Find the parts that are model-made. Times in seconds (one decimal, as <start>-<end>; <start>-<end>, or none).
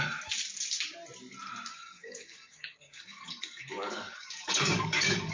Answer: 1.7-5.3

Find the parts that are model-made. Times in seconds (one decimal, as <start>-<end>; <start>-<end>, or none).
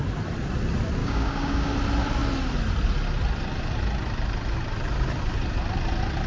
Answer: 1.0-1.7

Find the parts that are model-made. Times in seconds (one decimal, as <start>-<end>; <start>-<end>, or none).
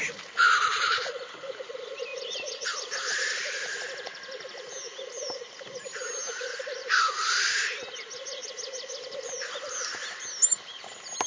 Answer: none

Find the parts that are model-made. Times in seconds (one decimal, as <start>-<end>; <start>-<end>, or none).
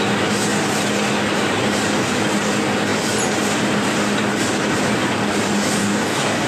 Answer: 5.8-6.5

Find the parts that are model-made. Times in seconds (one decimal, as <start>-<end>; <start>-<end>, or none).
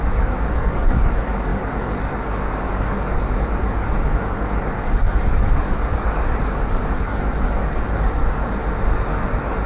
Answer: 0.0-8.6; 9.1-9.7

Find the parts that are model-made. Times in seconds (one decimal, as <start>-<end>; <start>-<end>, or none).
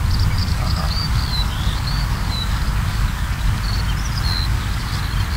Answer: 0.4-3.6; 4.5-5.0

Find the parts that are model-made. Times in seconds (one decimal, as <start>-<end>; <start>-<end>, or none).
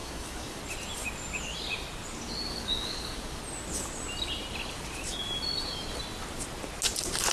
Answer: 0.0-0.6; 2.5-3.4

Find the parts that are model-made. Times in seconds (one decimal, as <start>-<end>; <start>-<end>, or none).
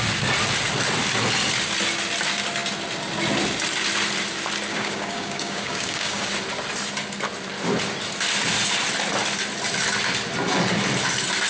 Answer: 4.7-6.3